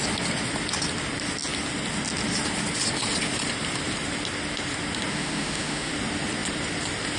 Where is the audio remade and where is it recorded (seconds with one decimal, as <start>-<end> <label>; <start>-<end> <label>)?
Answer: 0.0-5.1 recorded; 5.1-5.9 remade; 5.9-7.2 recorded